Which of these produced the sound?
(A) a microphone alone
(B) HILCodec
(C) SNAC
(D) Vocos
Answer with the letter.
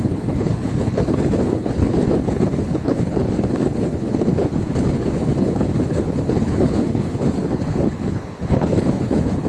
B